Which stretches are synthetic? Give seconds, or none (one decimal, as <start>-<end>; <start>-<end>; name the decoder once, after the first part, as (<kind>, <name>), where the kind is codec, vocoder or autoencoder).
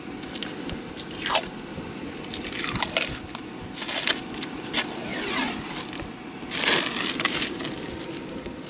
none